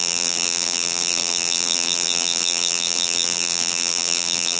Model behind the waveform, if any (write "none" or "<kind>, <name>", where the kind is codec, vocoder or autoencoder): vocoder, BigVGAN v2